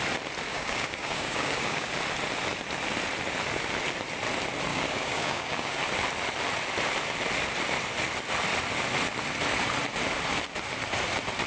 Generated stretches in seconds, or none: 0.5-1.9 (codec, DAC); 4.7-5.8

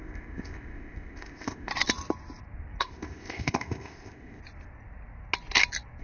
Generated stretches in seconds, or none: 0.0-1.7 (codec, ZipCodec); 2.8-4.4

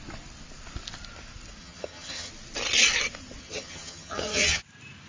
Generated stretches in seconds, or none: 1.6-2.3 (vocoder, HiFi-GAN); 3.4-4.6